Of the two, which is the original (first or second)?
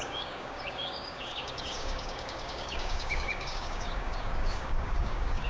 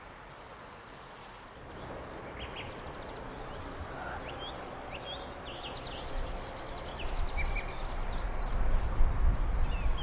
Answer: second